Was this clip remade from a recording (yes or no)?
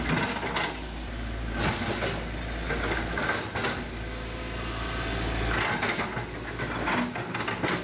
no